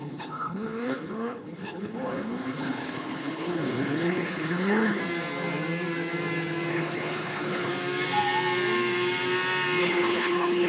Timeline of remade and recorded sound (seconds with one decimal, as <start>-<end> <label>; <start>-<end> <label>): 0.0-5.0 remade; 5.0-6.7 recorded; 6.7-7.7 remade; 7.7-9.8 recorded; 9.8-10.7 remade